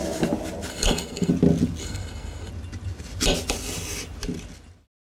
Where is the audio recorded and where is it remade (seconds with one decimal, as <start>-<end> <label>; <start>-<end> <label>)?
0.0-0.7 recorded; 0.7-1.3 remade; 1.3-1.8 recorded; 1.8-2.5 remade; 2.5-5.1 recorded